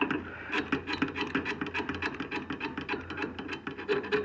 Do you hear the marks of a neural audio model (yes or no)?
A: no